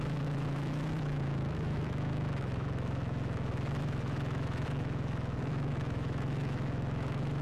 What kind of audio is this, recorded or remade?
remade